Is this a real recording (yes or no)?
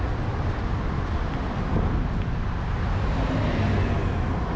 yes